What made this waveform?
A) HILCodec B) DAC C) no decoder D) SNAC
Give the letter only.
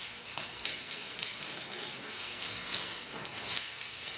D